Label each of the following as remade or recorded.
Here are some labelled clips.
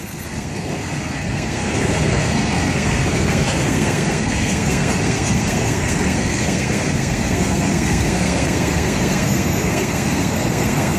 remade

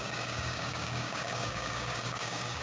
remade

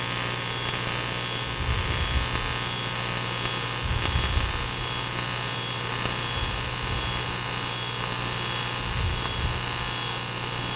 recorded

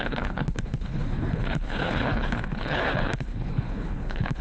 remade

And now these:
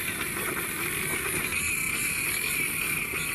recorded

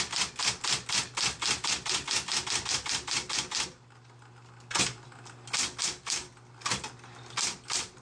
recorded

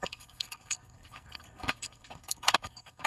remade